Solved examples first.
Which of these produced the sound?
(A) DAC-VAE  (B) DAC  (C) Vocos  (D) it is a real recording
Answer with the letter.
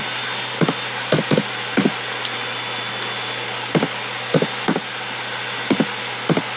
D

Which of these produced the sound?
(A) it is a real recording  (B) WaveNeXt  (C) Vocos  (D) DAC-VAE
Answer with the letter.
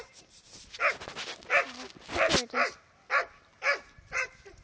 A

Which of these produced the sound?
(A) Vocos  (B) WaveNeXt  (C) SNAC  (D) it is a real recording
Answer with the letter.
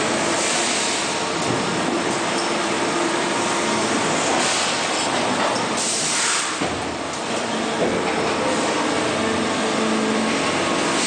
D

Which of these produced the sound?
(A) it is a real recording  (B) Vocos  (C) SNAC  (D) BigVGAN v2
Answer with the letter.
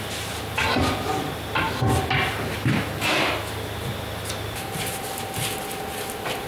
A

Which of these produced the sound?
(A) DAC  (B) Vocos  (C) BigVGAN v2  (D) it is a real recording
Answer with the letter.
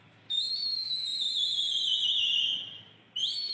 D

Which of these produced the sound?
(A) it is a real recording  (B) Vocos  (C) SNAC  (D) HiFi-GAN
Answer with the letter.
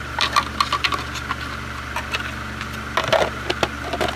A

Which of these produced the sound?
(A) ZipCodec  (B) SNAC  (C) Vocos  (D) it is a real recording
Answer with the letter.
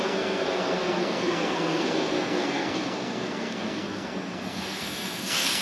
B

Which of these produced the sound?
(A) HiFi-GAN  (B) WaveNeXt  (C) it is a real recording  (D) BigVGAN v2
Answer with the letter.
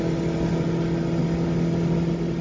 C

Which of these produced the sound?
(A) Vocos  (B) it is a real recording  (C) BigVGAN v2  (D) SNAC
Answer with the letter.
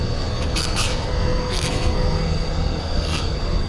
D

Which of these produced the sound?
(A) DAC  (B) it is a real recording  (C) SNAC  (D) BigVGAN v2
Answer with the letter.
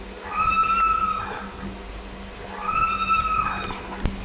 B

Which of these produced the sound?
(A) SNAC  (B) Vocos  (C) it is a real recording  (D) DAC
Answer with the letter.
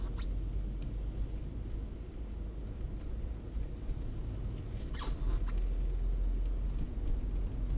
C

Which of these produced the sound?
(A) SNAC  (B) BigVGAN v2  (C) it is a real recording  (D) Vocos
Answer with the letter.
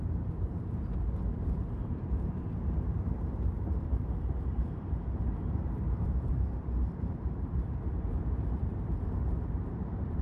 B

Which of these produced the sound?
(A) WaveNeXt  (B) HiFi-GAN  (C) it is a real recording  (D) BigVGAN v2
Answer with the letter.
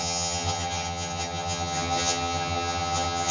B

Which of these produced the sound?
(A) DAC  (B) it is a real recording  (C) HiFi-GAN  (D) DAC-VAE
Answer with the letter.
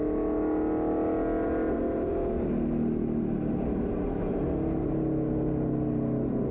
B